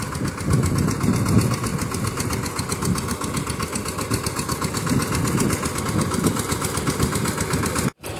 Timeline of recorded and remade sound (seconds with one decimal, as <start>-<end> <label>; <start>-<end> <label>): 0.0-8.2 recorded